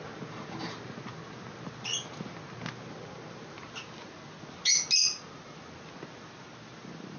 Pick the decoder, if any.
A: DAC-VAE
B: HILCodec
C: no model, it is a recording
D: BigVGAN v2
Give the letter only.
C